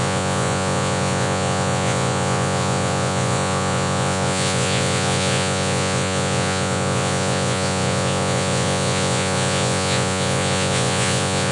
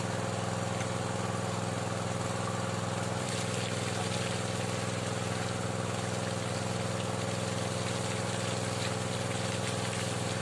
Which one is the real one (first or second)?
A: second